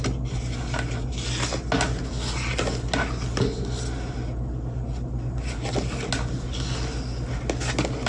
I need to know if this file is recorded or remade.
recorded